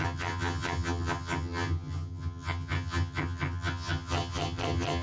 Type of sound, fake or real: fake